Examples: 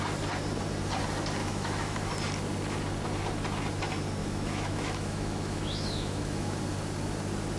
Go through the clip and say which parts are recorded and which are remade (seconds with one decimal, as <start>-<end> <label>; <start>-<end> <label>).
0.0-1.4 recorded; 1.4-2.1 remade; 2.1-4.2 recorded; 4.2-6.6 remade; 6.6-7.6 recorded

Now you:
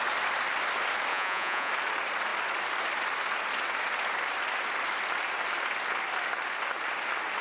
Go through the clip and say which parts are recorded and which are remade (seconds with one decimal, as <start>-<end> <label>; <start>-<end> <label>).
0.0-1.1 recorded; 1.1-1.7 remade; 1.7-7.4 recorded

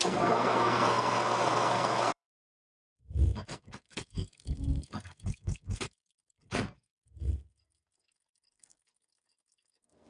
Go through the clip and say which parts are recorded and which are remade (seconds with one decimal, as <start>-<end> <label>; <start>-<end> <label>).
0.0-10.1 remade